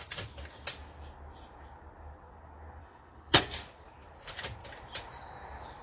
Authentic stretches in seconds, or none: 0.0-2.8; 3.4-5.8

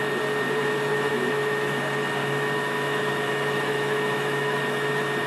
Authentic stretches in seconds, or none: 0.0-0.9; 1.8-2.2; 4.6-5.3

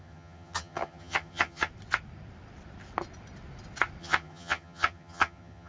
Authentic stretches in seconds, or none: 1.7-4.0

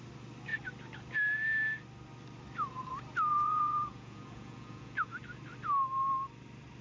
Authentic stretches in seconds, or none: 0.0-3.3; 5.1-6.8

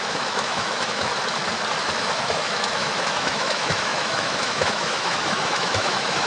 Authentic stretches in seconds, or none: 1.1-1.8

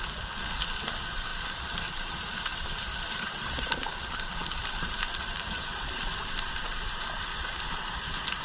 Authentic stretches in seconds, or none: 0.0-1.3; 2.1-2.9; 7.2-8.4